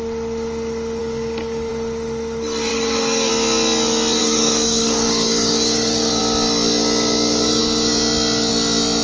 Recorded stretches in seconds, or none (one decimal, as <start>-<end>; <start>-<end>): 0.0-1.0; 1.7-2.7; 3.3-4.2; 6.2-9.0